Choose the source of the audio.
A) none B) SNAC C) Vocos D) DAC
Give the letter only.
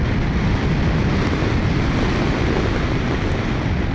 A